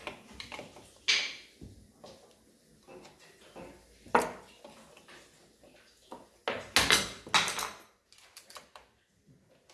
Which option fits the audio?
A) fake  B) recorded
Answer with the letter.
B